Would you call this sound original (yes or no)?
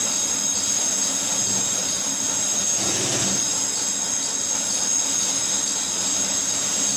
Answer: yes